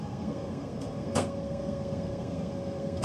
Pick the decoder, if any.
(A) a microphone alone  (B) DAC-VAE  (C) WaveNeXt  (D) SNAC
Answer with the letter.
D